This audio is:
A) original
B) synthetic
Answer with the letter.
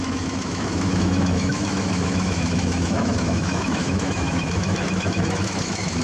B